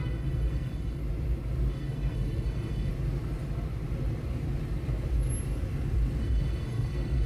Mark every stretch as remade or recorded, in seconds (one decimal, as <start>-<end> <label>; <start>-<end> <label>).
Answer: 0.0-1.0 remade; 1.0-1.7 recorded; 1.7-2.9 remade; 2.9-6.2 recorded; 6.2-7.3 remade